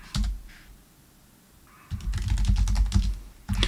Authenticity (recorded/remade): recorded